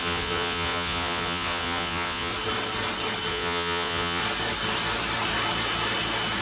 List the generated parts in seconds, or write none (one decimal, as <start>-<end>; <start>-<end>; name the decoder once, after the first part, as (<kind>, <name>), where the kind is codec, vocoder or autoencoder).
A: 0.0-2.3 (vocoder, Vocos); 3.3-4.2